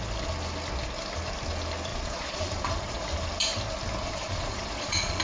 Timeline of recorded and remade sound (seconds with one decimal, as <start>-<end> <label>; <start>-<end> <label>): 0.0-1.9 recorded; 1.9-3.0 remade; 3.0-4.0 recorded; 4.0-5.2 remade